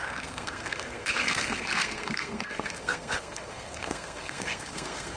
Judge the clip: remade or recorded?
remade